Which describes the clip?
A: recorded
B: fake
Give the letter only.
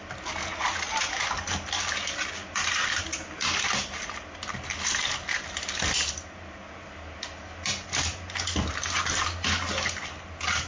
A